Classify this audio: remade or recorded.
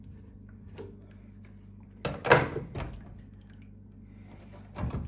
recorded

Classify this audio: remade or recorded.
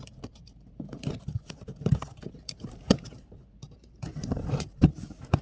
remade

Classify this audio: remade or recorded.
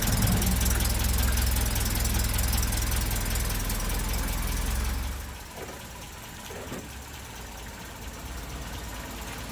recorded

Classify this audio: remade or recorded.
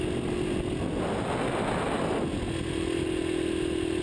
recorded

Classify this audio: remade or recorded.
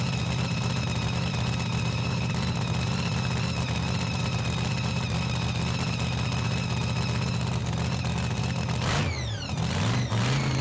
recorded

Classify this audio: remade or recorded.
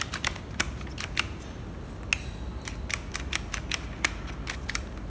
recorded